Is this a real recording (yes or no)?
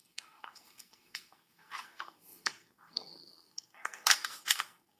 no